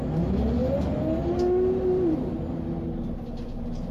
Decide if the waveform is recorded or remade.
recorded